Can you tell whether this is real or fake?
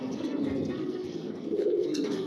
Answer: fake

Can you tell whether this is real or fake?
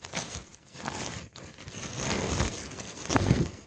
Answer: fake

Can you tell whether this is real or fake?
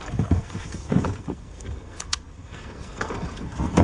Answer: fake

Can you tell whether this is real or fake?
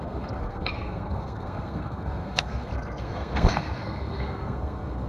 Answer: fake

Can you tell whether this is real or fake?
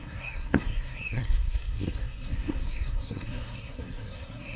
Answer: fake